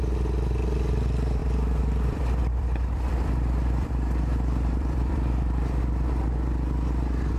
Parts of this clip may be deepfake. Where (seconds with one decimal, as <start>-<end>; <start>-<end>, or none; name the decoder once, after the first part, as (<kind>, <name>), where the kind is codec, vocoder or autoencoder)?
1.4-5.8 (vocoder, BigVGAN v2)